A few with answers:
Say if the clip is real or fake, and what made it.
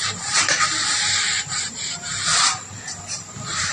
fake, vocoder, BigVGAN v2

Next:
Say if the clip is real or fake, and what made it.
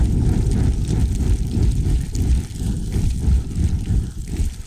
fake, vocoder, BigVGAN v2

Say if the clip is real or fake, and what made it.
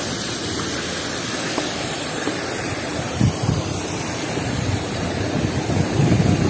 fake, vocoder, BigVGAN v2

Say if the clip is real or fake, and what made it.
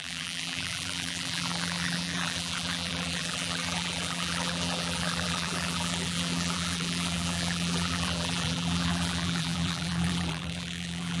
fake, vocoder, BigVGAN v2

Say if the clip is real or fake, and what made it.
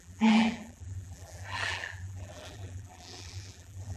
fake, vocoder, BigVGAN v2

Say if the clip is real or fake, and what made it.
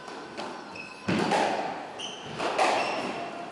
real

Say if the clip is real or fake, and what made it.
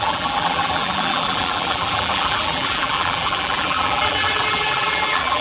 fake, vocoder, BigVGAN v2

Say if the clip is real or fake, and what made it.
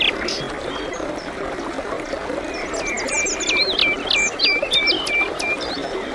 real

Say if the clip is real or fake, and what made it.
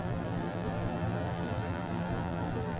fake, vocoder, BigVGAN v2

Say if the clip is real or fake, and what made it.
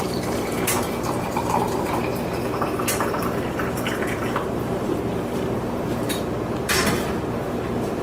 fake, vocoder, BigVGAN v2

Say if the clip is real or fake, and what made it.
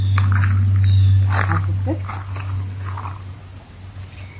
real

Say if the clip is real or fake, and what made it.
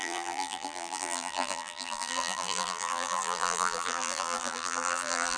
fake, vocoder, BigVGAN v2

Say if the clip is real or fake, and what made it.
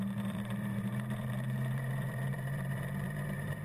fake, vocoder, BigVGAN v2